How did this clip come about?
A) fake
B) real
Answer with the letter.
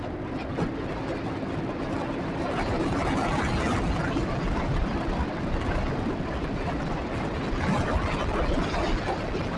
B